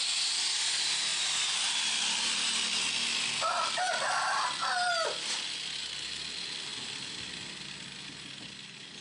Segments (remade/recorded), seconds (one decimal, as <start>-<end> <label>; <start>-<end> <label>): 0.0-9.0 recorded